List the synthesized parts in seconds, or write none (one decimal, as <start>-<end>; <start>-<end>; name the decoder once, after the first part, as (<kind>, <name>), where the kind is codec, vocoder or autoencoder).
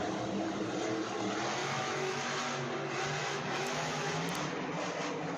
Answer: 1.6-2.2 (autoencoder, DAC-VAE); 3.3-4.1